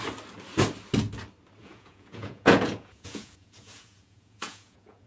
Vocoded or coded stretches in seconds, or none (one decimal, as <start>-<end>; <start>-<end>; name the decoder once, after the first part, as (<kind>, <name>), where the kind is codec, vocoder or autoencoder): 1.6-5.1 (vocoder, Vocos)